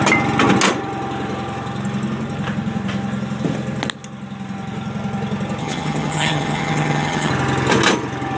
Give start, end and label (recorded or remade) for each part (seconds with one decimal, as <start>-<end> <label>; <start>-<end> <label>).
0.0-5.6 recorded; 5.6-7.3 remade; 7.3-8.4 recorded